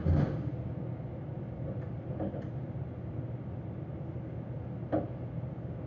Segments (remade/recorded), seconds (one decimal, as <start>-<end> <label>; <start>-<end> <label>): 0.0-5.9 recorded